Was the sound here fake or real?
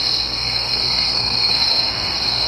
fake